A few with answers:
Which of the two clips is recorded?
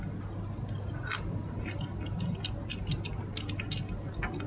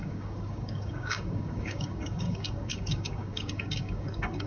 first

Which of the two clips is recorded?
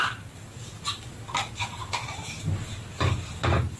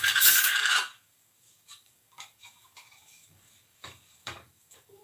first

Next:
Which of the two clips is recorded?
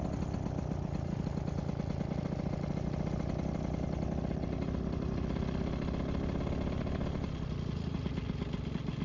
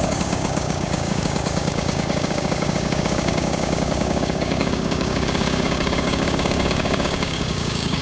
first